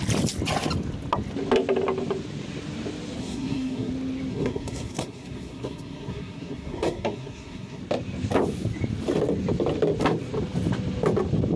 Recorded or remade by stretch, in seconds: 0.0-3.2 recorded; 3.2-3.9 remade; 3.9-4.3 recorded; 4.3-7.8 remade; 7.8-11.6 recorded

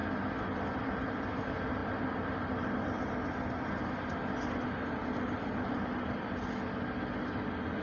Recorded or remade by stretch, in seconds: 0.0-1.3 remade; 1.3-1.8 recorded; 1.8-2.4 remade; 2.4-7.8 recorded

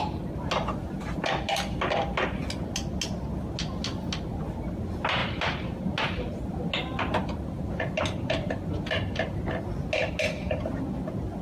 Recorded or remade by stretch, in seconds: 0.0-11.4 recorded

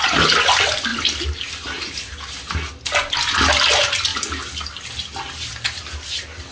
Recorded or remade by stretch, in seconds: 0.0-6.5 recorded